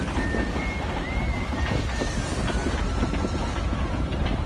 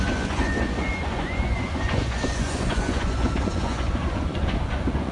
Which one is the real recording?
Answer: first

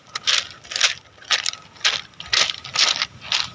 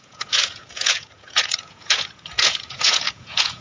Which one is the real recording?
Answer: first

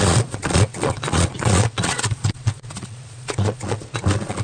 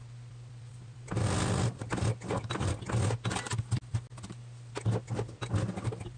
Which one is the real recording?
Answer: second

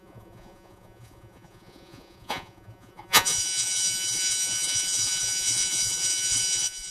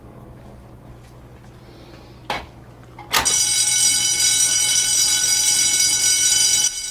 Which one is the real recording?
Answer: second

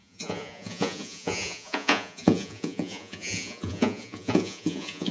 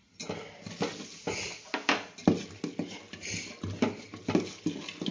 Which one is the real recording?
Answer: second